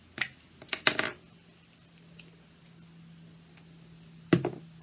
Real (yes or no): yes